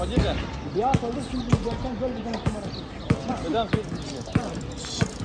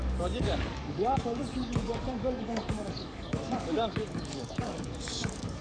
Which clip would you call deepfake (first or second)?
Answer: second